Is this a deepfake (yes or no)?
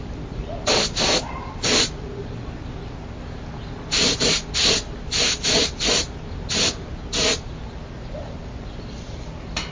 no